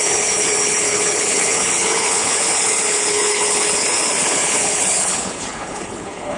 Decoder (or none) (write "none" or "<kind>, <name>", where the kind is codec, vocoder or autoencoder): codec, HILCodec